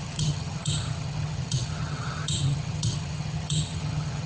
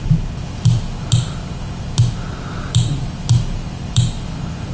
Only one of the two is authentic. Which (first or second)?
second